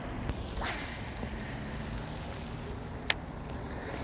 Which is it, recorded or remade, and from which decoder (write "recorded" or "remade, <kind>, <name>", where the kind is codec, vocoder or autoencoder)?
recorded